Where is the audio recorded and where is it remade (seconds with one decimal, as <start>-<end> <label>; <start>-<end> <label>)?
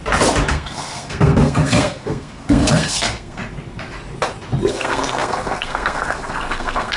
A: 0.0-0.5 recorded; 0.5-3.4 remade; 3.4-4.7 recorded; 4.7-7.0 remade